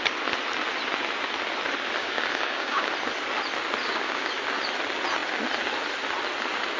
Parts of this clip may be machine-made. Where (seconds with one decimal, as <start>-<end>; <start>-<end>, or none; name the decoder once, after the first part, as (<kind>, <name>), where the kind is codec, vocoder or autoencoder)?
2.0-2.9 (codec, DAC); 3.8-4.3